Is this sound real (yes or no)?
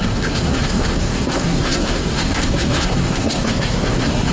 no